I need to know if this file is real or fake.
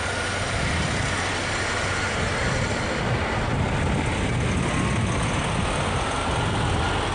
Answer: real